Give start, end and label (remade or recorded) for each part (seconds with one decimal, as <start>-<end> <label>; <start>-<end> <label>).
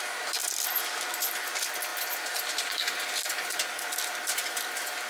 0.0-5.1 recorded